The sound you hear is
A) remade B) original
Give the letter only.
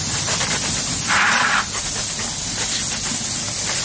B